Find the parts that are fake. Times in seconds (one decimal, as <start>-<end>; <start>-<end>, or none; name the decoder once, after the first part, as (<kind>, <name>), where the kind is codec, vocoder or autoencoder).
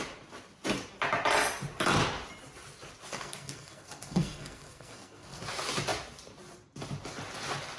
3.1-5.4 (codec, SNAC)